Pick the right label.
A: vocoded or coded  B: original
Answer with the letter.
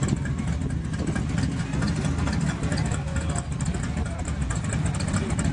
B